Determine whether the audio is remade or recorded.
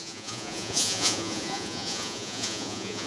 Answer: remade